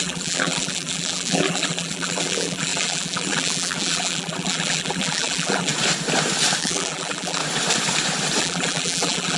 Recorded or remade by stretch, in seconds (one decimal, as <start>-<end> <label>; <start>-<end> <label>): 0.0-5.7 remade; 5.7-6.6 recorded; 6.6-7.4 remade; 7.4-8.4 recorded; 8.4-9.4 remade